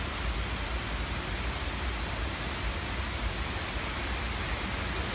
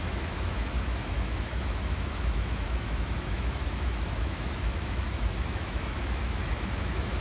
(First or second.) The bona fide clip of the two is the first